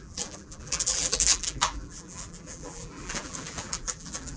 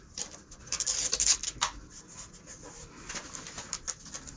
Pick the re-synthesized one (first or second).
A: first